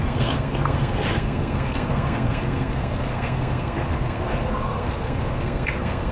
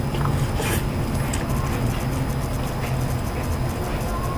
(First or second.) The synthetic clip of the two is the first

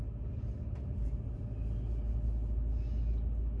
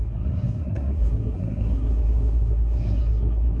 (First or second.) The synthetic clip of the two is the second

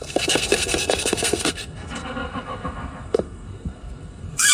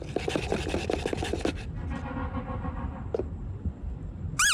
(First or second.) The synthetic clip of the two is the first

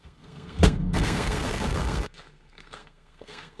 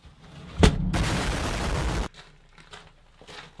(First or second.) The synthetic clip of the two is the first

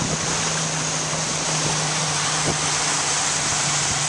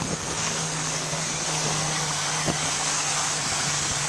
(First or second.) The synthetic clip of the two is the second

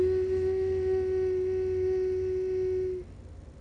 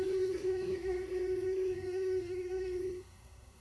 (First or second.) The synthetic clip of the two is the second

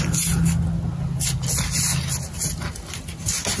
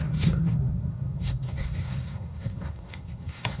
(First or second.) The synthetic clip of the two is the second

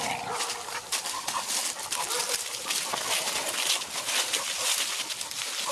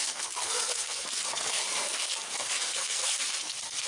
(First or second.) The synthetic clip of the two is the second